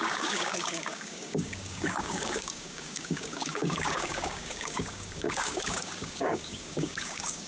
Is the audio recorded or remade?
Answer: remade